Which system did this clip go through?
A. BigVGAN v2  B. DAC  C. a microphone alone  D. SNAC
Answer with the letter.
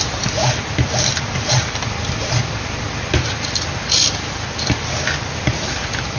C